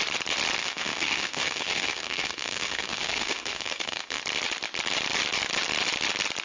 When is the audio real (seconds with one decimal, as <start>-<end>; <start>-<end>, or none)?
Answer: 0.0-0.6; 4.2-6.4